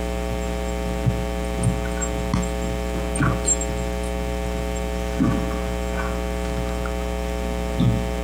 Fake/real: real